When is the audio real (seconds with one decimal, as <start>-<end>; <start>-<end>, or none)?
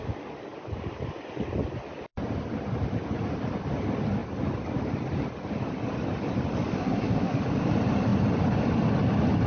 0.0-6.8; 7.4-9.5